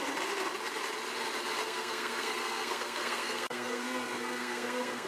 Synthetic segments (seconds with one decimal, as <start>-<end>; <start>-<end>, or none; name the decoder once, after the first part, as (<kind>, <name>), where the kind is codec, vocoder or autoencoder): 1.6-5.1 (codec, SNAC)